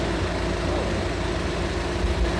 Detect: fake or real real